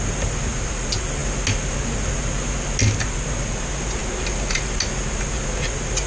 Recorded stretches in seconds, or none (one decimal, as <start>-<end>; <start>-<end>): 0.0-6.1